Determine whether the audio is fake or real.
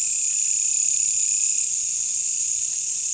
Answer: real